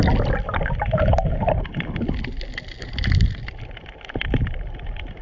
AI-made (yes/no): no